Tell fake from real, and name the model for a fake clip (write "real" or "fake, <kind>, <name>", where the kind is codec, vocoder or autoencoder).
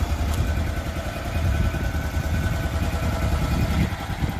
real